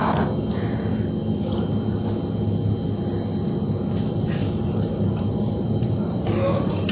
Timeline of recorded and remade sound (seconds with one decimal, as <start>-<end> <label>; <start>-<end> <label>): 0.0-4.4 recorded; 4.4-6.9 remade